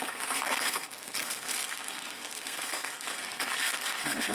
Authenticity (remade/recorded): remade